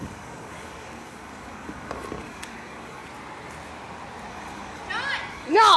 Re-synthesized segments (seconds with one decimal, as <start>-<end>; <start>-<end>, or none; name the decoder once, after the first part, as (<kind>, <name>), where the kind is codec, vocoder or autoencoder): 0.0-3.0 (codec, DAC); 4.3-4.8; 5.3-5.8

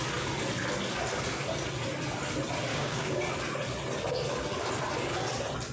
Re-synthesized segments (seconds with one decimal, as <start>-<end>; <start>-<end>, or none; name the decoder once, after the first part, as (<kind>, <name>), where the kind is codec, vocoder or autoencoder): 2.7-3.2 (codec, DAC)

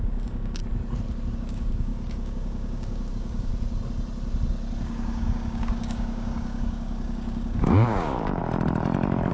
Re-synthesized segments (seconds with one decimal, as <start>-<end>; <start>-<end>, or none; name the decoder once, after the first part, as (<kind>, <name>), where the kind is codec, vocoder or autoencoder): 0.0-0.6 (codec, DAC); 1.3-3.5; 4.8-8.4

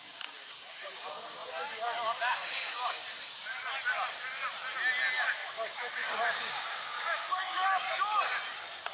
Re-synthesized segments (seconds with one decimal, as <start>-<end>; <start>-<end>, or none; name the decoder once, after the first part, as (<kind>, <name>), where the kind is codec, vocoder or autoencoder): 0.0-3.0 (codec, DAC); 5.3-7.6